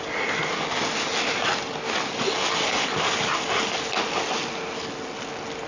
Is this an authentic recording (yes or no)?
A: yes